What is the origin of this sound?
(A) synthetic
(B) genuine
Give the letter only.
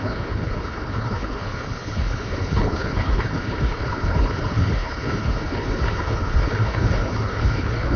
A